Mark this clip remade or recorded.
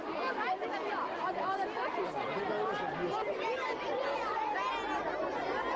recorded